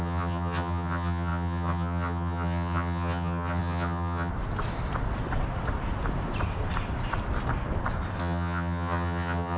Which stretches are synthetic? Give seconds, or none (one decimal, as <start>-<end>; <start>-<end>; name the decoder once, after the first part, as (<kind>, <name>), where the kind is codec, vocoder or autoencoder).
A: 0.0-4.3 (vocoder, HiFi-GAN); 8.2-9.6